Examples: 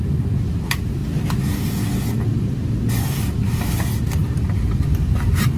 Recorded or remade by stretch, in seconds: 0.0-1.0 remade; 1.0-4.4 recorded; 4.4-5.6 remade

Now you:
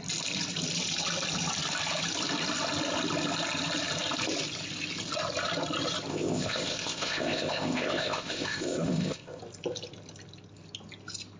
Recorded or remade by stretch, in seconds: 0.0-6.1 recorded; 6.1-9.4 remade; 9.4-11.4 recorded

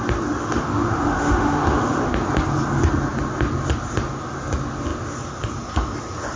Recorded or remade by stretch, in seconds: 0.0-0.4 recorded; 0.4-2.1 remade; 2.1-6.4 recorded

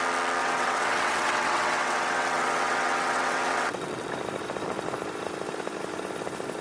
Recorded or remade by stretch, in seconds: 0.0-0.4 recorded; 0.4-4.1 remade; 4.1-6.6 recorded

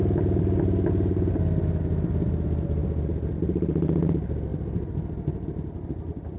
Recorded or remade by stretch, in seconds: 0.0-6.4 recorded

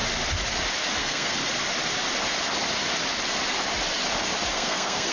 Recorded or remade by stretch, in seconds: 0.0-1.0 recorded; 1.0-1.4 remade; 1.4-4.5 recorded; 4.5-5.1 remade

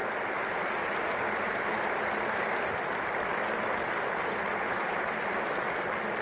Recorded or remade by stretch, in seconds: 0.0-3.7 remade; 3.7-6.2 recorded